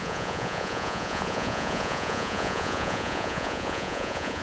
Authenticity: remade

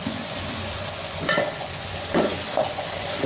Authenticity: remade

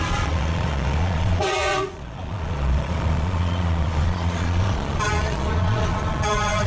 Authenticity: remade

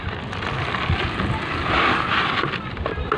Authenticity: recorded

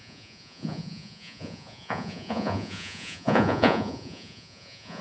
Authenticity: remade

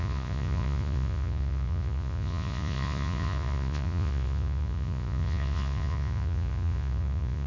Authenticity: remade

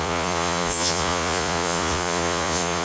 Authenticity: remade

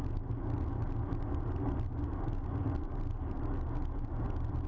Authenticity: recorded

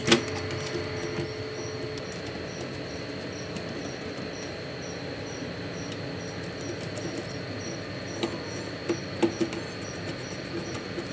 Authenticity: recorded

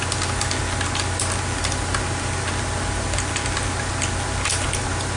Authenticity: recorded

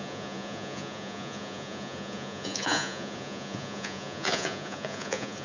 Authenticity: remade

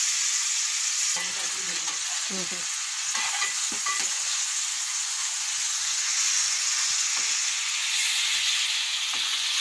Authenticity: remade